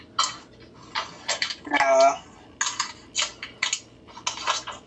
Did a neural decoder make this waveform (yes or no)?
no